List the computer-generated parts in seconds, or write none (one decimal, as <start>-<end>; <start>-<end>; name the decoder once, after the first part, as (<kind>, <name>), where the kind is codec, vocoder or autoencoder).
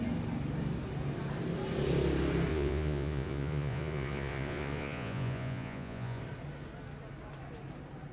2.5-6.2 (vocoder, Vocos)